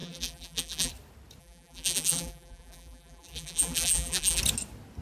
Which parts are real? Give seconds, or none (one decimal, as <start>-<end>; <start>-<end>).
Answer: 0.9-1.4; 4.4-5.0